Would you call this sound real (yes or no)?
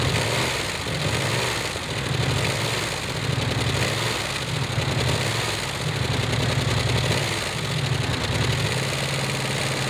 yes